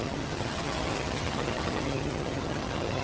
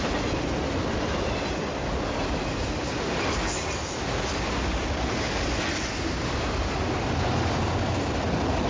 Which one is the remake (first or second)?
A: first